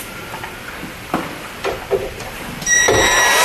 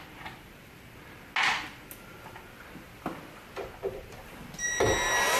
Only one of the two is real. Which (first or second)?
second